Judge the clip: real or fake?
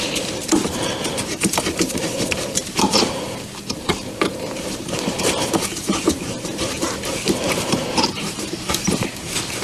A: fake